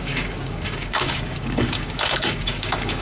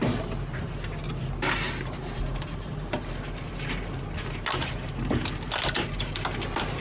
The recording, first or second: second